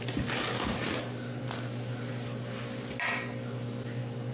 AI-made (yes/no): no